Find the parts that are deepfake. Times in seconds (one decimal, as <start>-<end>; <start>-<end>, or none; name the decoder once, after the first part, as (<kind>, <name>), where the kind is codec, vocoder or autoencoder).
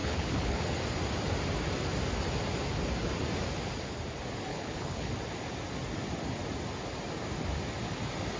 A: 0.0-0.6 (codec, HILCodec); 4.5-5.1